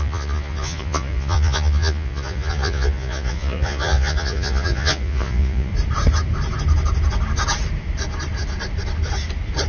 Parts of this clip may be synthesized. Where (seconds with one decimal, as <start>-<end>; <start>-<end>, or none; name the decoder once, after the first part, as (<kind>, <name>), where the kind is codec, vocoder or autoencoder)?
0.0-5.7 (vocoder, Vocos)